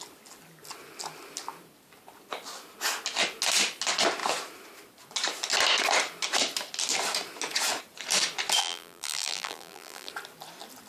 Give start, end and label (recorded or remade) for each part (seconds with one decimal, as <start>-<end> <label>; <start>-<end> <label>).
0.0-8.6 recorded; 8.6-10.1 remade; 10.1-10.9 recorded